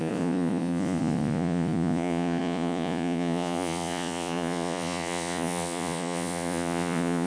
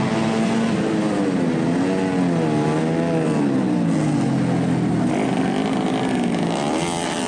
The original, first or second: second